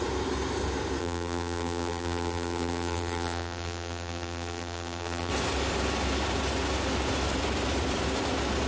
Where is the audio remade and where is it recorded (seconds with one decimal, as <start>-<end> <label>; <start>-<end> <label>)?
0.0-1.0 recorded; 1.0-5.3 remade; 5.3-8.7 recorded